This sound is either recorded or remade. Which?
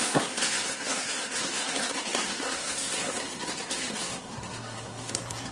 remade